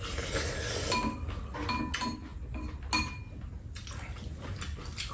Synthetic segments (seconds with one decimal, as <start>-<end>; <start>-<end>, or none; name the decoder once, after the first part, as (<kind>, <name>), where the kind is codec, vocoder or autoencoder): none